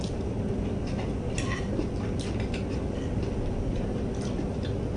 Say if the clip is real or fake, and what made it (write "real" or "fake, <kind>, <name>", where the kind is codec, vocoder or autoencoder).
real